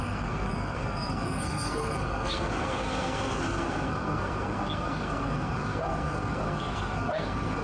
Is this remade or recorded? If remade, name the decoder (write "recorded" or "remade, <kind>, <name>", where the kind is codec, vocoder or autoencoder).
remade, codec, SNAC